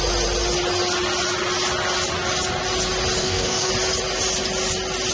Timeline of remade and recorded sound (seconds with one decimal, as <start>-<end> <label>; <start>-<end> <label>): 0.0-3.2 recorded; 3.2-3.7 remade; 3.7-5.1 recorded